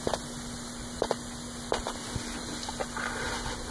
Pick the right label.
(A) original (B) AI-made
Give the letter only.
A